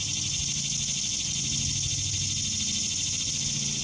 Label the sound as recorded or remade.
recorded